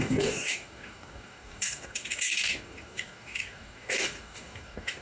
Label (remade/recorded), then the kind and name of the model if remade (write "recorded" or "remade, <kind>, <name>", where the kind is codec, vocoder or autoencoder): remade, codec, DAC